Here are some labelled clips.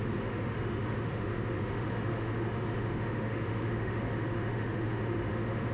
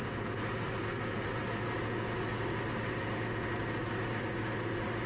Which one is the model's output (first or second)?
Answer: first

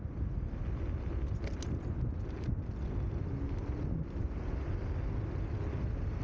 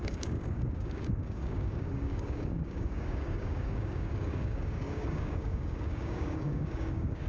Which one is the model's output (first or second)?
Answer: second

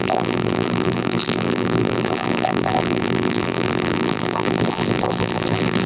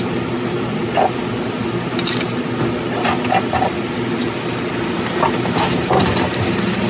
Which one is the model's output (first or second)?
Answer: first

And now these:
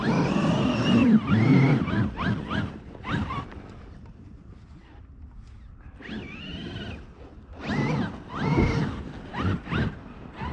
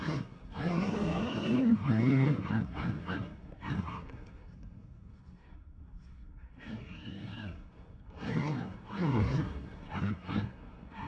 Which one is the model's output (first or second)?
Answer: second